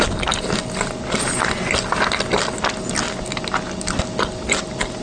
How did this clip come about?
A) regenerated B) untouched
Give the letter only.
B